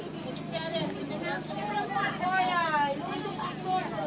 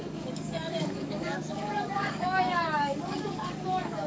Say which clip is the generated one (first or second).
second